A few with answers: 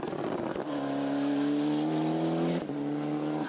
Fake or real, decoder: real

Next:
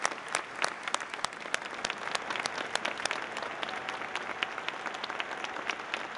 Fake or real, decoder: real